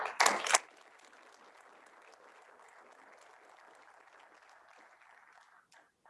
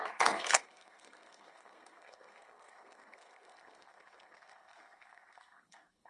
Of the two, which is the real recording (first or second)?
first